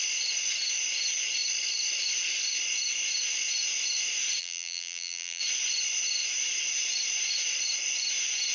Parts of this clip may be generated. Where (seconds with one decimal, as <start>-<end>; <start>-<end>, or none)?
4.4-5.4